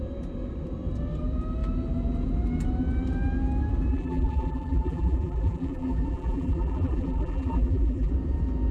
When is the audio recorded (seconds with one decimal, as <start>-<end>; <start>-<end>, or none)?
0.0-3.9; 8.1-8.7